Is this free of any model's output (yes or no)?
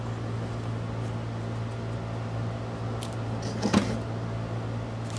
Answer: yes